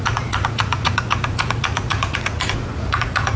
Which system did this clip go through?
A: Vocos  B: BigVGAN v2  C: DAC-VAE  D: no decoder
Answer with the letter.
A